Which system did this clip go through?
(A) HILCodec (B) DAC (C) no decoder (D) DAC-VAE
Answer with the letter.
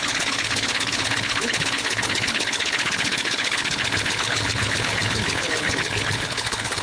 A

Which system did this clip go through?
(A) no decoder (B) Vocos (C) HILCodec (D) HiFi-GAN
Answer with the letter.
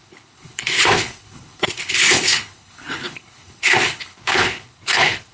C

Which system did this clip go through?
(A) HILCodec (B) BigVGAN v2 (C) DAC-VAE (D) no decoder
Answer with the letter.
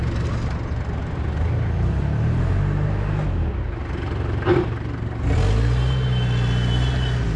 D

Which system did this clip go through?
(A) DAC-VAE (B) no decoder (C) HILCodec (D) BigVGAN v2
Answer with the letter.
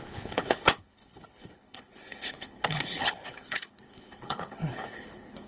C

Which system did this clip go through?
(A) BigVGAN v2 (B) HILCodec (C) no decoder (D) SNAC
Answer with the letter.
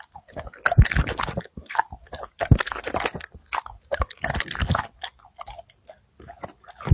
C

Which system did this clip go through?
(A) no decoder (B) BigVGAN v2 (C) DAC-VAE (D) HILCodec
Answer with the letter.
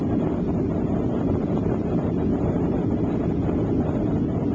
A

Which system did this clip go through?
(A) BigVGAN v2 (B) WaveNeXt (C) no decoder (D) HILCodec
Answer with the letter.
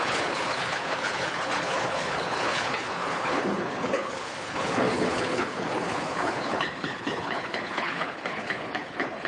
D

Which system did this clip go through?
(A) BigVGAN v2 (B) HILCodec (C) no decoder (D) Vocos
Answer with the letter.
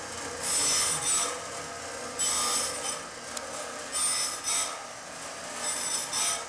C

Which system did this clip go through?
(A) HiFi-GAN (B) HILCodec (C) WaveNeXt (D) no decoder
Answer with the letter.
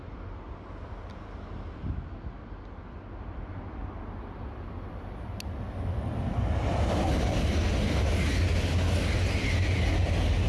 D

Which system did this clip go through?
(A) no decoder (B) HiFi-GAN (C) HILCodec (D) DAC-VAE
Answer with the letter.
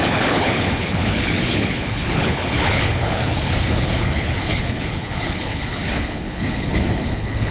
C